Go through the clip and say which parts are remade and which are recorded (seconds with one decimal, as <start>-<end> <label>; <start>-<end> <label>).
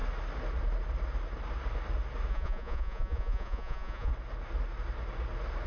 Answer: 0.0-2.3 recorded; 2.3-4.1 remade; 4.1-5.7 recorded